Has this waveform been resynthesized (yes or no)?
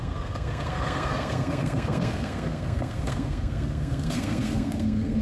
yes